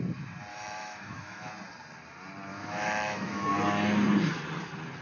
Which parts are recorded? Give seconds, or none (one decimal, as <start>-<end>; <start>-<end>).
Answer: 0.0-0.5; 1.5-2.5; 3.5-5.0